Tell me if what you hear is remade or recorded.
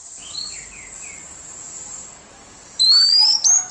remade